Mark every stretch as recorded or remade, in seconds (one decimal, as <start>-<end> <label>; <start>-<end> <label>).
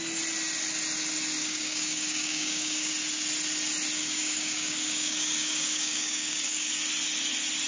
0.0-1.4 recorded; 1.4-2.9 remade; 2.9-4.0 recorded; 4.0-6.8 remade; 6.8-7.7 recorded